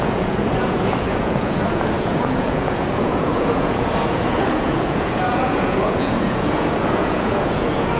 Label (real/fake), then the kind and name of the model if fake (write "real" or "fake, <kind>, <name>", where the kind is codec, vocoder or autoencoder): fake, vocoder, Vocos